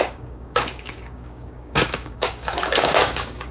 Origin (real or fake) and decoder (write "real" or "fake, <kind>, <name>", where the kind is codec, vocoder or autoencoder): fake, codec, DAC